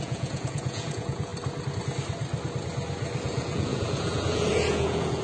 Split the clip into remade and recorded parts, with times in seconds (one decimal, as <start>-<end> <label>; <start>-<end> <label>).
0.0-1.3 remade; 1.3-3.2 recorded; 3.2-5.2 remade